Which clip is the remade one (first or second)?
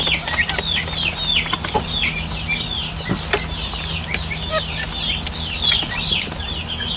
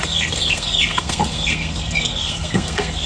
second